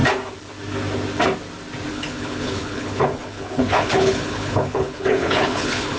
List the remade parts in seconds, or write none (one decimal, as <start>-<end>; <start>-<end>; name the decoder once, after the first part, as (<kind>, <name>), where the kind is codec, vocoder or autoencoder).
1.9-6.0 (codec, HILCodec)